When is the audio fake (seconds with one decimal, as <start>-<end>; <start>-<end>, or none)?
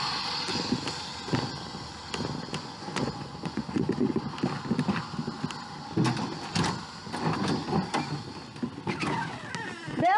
2.5-4.2